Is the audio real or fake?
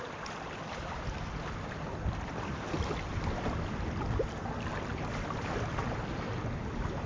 real